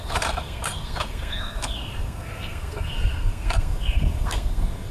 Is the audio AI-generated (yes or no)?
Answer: yes